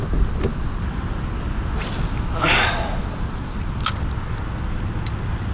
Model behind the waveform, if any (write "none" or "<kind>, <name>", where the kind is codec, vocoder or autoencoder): none